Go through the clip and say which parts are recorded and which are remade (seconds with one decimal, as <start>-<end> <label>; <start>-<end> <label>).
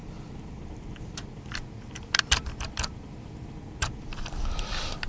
0.0-5.1 recorded